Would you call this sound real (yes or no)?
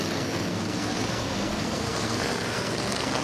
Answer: no